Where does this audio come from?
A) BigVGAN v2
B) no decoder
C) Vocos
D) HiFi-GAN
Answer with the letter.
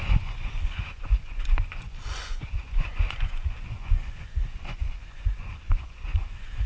C